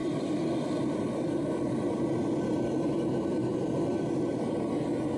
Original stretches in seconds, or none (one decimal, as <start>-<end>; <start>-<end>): 3.5-5.2